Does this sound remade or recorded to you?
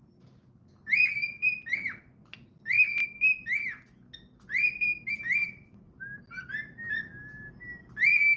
recorded